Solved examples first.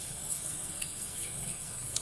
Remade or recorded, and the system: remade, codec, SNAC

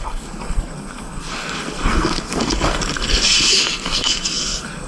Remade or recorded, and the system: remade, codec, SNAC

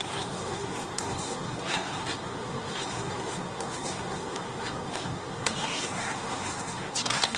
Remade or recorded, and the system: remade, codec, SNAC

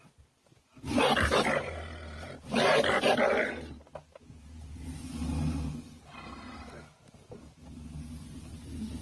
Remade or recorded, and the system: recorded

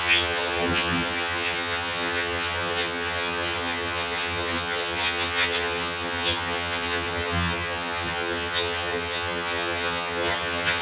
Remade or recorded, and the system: remade, vocoder, HiFi-GAN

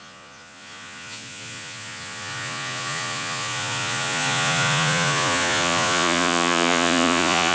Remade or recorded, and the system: remade, vocoder, Vocos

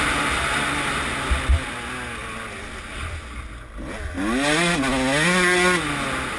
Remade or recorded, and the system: recorded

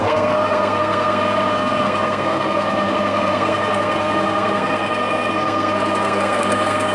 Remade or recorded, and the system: remade, codec, SNAC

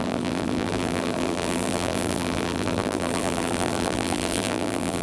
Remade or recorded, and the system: remade, vocoder, BigVGAN v2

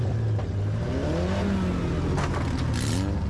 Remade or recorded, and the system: recorded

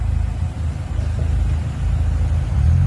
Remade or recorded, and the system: recorded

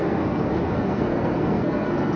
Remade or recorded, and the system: remade, codec, SNAC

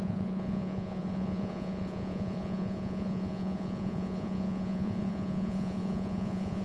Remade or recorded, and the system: remade, vocoder, Vocos